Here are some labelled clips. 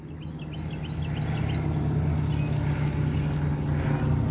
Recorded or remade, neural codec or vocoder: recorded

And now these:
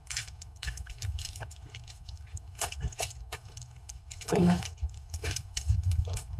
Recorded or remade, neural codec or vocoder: remade, codec, SNAC